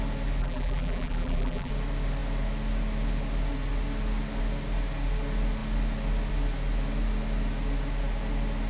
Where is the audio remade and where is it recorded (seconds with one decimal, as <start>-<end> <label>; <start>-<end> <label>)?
0.0-0.4 recorded; 0.4-1.7 remade; 1.7-8.7 recorded